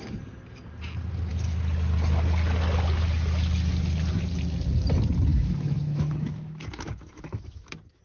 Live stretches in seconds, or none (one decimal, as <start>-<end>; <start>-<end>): 0.0-5.3